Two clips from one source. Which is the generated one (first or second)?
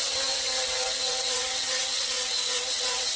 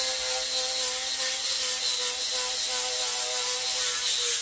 first